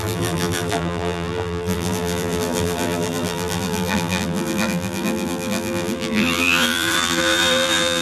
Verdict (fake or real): fake